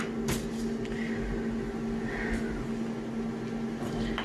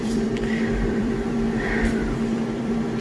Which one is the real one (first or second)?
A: first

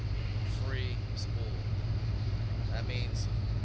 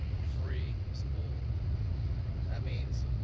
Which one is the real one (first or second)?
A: first